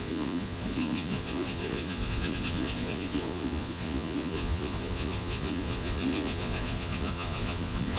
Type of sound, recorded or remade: remade